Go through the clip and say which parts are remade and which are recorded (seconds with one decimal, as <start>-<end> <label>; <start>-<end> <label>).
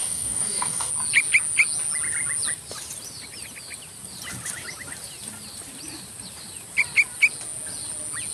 0.0-0.9 remade; 0.9-8.3 recorded